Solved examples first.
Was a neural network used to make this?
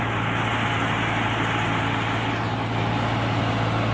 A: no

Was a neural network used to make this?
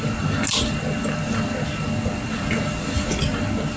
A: no